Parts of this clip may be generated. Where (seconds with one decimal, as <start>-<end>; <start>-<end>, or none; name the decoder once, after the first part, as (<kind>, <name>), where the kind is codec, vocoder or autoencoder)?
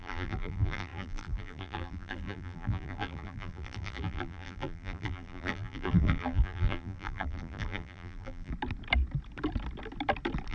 0.0-8.5 (vocoder, BigVGAN v2)